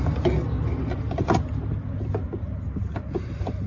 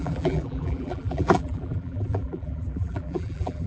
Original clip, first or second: first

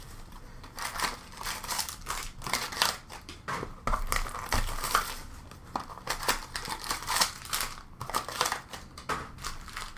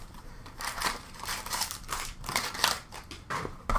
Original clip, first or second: first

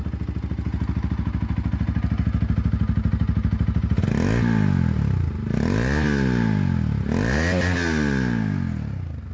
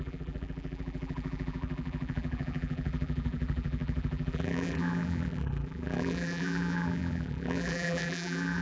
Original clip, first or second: first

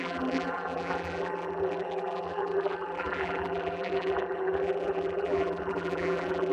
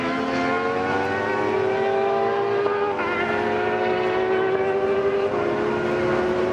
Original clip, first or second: second